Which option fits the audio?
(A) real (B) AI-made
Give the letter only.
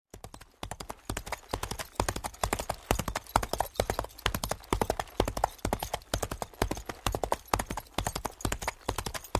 A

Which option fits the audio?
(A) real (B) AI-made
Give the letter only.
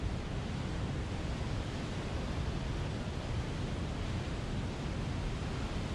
B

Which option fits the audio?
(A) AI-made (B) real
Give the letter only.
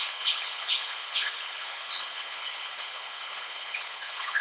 A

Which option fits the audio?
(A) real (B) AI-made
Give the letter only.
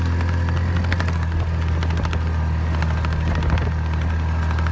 A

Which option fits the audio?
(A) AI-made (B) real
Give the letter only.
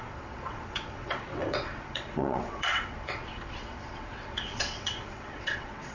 A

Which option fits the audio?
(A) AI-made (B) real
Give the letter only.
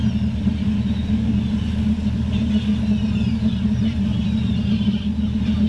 B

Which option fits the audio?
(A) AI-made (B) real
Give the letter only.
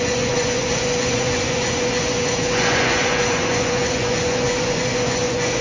A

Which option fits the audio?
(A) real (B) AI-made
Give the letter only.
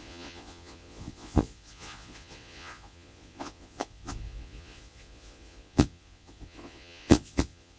B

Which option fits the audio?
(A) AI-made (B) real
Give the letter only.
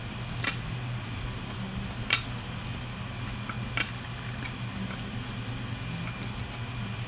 B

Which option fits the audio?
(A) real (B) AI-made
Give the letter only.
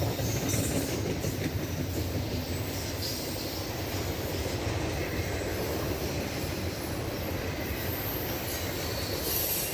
B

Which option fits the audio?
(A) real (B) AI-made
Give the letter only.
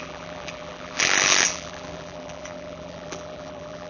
B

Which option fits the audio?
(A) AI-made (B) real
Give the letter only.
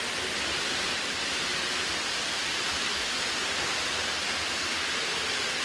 B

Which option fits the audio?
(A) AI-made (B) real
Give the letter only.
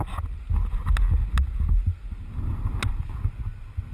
B